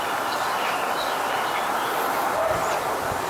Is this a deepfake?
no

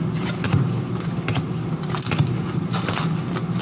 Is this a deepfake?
no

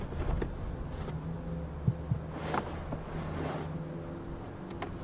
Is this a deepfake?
no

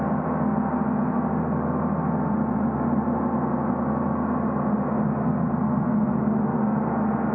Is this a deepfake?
no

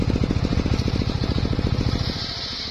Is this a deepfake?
no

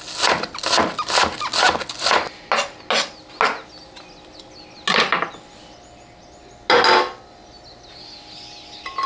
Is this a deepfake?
no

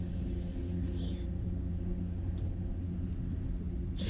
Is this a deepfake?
no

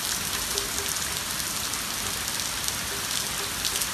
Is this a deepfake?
no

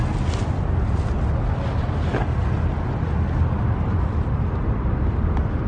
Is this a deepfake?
no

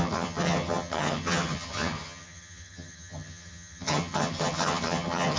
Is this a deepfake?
yes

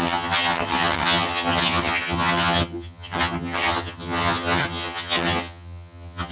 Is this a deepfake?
yes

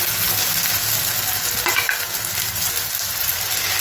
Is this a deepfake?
no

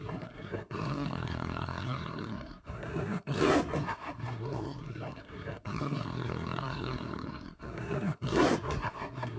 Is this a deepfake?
yes